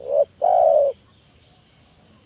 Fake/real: real